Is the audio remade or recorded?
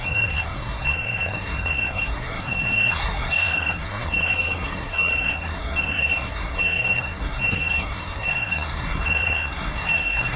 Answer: remade